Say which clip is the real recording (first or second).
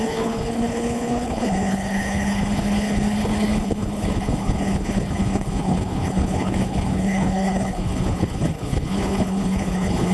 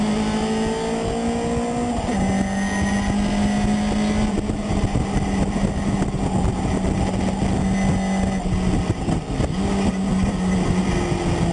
second